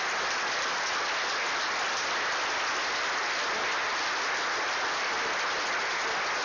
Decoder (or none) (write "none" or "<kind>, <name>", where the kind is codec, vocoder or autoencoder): none